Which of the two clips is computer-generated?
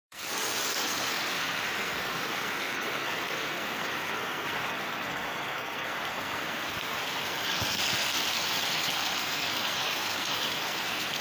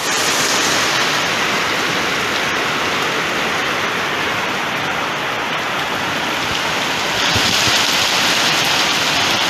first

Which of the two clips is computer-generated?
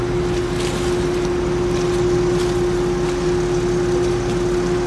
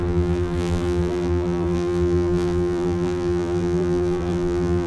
second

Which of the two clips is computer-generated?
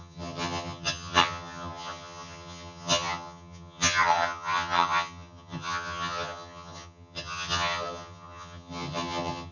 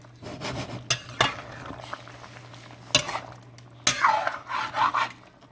first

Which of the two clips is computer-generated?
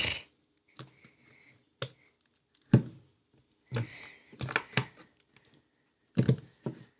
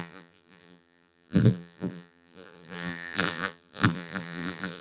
second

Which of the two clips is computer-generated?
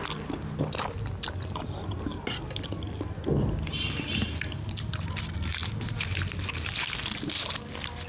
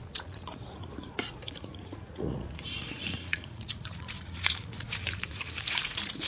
second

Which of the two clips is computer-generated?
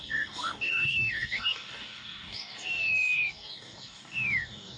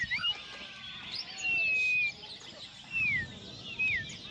first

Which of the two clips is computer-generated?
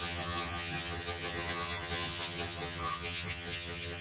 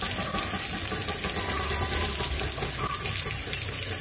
first